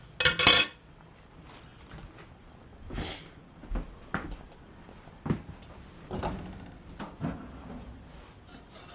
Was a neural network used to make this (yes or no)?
no